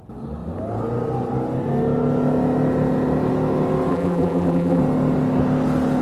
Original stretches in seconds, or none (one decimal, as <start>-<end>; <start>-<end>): 0.0-3.9; 4.8-6.0